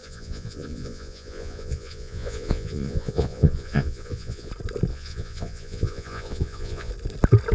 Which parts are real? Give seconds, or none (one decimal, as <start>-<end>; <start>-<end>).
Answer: 4.5-4.9; 6.9-7.5